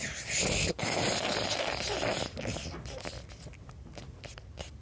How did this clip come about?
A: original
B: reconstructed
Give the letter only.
A